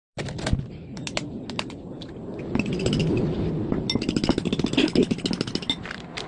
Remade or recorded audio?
recorded